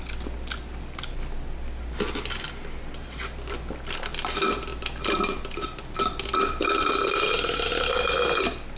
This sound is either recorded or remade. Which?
recorded